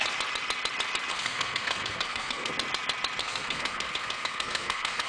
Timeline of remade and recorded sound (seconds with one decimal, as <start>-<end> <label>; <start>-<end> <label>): 0.0-1.1 recorded; 1.1-2.5 remade; 2.5-3.2 recorded; 3.2-5.1 remade